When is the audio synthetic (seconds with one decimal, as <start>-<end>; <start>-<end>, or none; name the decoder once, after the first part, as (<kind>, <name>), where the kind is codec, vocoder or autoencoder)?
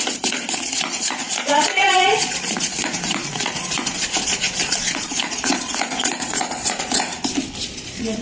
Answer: 0.0-7.1 (vocoder, Vocos); 7.6-8.2